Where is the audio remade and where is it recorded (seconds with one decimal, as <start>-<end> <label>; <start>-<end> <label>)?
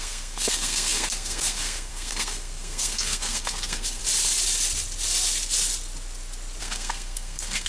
0.0-4.0 remade; 4.0-6.6 recorded; 6.6-7.7 remade